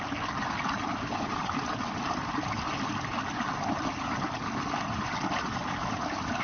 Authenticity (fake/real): real